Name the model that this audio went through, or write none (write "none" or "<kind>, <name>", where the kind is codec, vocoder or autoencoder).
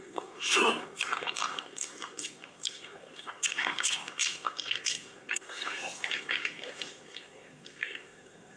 codec, SNAC